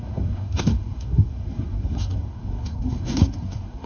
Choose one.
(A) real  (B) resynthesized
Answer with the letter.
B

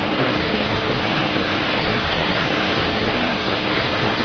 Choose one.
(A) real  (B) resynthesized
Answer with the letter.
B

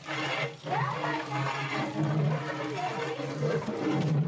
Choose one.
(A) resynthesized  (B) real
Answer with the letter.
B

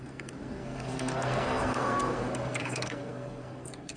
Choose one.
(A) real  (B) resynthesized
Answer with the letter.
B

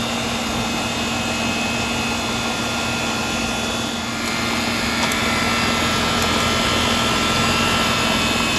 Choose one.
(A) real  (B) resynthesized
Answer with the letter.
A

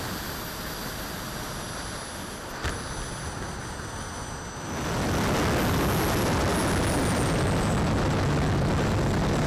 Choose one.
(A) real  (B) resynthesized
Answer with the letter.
A